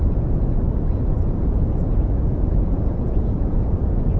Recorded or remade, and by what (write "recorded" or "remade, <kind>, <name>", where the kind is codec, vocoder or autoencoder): remade, vocoder, Vocos